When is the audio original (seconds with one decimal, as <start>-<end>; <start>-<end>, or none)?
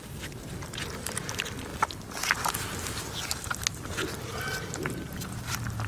0.0-5.9